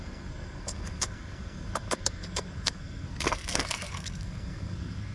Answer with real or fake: fake